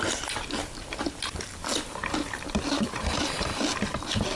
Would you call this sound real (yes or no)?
no